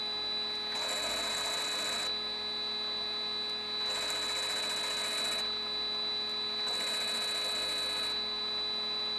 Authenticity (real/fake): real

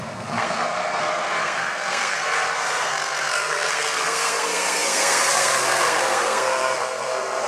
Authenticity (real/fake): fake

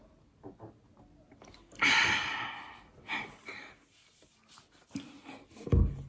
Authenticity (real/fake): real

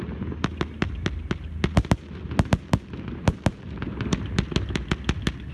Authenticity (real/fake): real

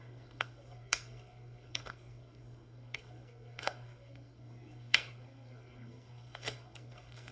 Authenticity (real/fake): fake